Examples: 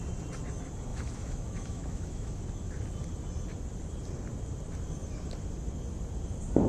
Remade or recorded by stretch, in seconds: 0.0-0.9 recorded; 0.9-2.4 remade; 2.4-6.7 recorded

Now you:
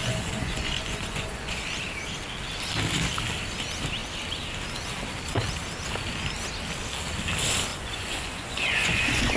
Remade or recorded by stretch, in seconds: 0.0-1.6 remade; 1.6-7.7 recorded; 7.7-9.4 remade

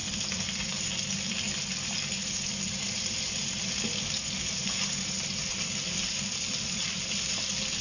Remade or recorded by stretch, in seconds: 0.0-7.8 recorded

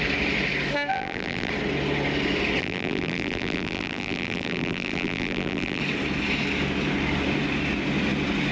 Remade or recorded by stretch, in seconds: 0.0-0.9 recorded; 0.9-1.5 remade; 1.5-2.6 recorded; 2.6-5.8 remade; 5.8-8.5 recorded

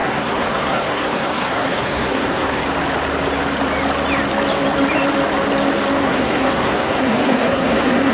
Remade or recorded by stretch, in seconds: 0.0-2.6 remade; 2.6-6.0 recorded; 6.0-8.1 remade

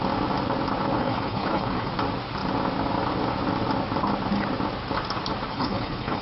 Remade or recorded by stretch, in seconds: 0.0-1.0 recorded; 1.0-1.9 remade; 1.9-5.5 recorded; 5.5-6.2 remade